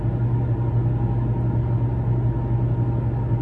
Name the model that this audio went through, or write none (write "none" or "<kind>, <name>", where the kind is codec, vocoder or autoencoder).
none